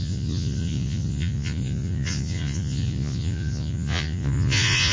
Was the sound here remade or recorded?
remade